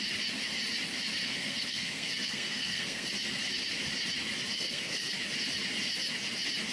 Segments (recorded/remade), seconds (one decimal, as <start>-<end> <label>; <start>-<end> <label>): 0.0-1.2 recorded; 1.2-3.1 remade; 3.1-4.5 recorded; 4.5-5.1 remade; 5.1-6.7 recorded